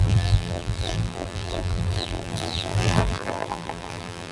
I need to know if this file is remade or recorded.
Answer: remade